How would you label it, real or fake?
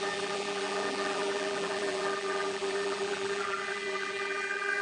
fake